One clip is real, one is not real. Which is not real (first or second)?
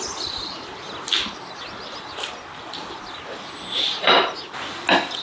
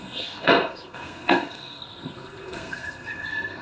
second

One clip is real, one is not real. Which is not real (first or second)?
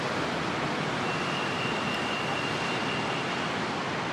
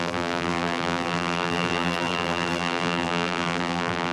second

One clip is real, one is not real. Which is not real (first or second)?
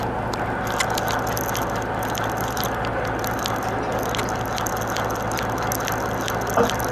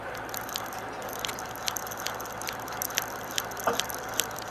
second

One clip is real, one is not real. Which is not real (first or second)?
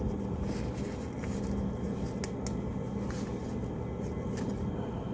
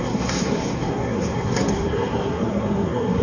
second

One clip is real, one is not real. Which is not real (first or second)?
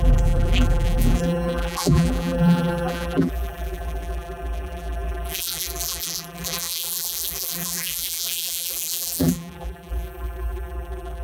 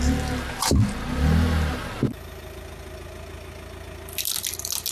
first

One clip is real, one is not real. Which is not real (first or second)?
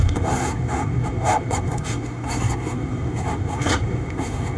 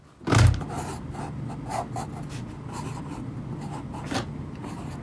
first